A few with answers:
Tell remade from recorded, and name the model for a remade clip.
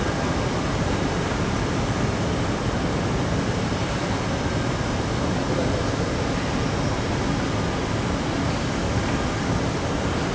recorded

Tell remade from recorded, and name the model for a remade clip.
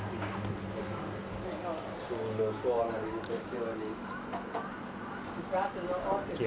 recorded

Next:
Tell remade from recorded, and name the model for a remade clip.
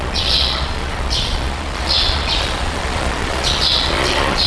remade, vocoder, Vocos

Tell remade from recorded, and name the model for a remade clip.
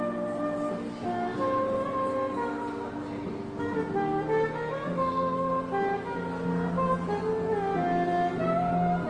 recorded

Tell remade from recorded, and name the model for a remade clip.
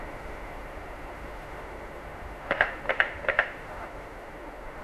remade, autoencoder, DAC-VAE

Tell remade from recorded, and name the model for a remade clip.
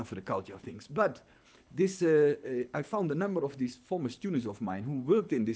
remade, codec, HILCodec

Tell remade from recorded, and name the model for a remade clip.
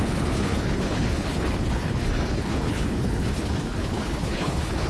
remade, codec, HILCodec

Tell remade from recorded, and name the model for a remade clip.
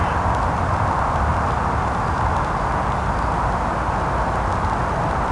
recorded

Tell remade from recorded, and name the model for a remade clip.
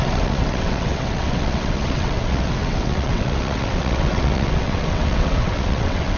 remade, vocoder, WaveNeXt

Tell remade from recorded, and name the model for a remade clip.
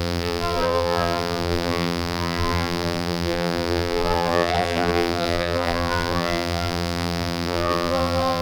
remade, vocoder, BigVGAN v2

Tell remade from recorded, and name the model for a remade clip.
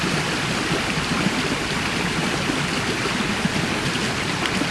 recorded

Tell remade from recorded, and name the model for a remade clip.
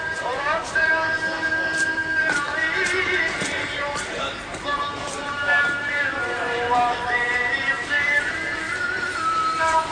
remade, vocoder, BigVGAN v2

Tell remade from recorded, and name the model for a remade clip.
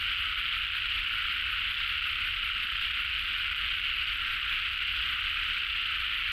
recorded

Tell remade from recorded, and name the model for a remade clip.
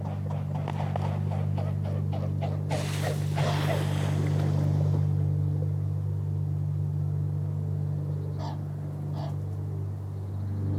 recorded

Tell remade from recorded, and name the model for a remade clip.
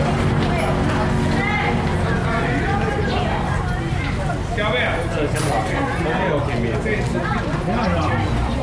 recorded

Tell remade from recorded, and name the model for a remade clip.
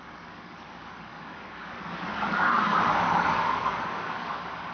remade, codec, DAC